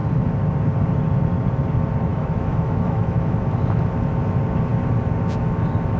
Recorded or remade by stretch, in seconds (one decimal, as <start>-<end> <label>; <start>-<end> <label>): 0.0-2.1 recorded; 2.1-3.5 remade; 3.5-6.0 recorded